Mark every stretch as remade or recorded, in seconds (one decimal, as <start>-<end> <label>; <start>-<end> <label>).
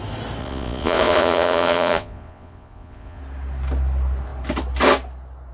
0.0-0.4 recorded; 0.4-3.2 remade; 3.2-5.5 recorded